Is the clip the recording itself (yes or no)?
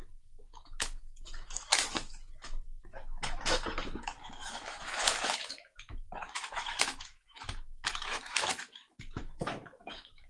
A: no